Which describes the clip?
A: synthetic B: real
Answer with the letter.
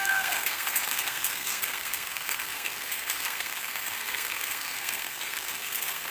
A